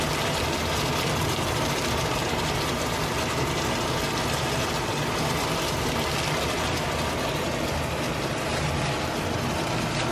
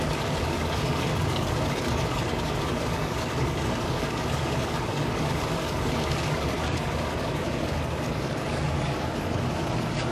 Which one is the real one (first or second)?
first